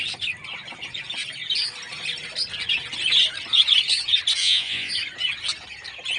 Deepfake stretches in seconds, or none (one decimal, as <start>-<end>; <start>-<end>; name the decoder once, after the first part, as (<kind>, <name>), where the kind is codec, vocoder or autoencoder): 4.4-4.9 (vocoder, Vocos)